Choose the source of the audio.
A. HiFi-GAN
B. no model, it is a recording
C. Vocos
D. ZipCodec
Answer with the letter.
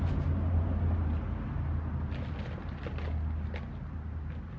B